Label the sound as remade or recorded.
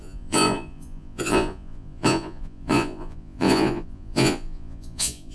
remade